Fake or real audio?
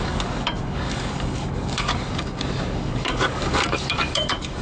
fake